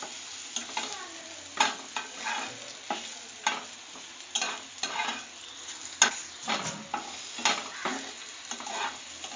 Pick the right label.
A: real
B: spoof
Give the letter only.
A